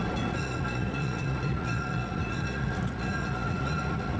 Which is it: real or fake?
fake